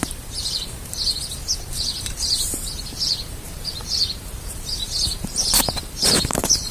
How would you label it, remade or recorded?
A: remade